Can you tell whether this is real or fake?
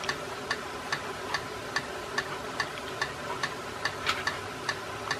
real